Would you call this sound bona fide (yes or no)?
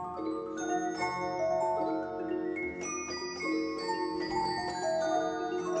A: yes